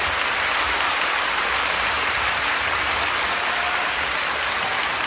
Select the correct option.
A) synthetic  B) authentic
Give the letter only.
B